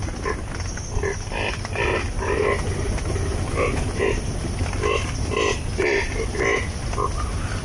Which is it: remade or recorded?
recorded